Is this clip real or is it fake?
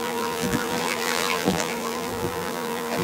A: fake